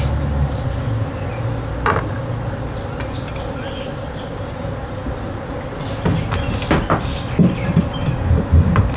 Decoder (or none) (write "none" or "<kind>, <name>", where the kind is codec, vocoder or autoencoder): none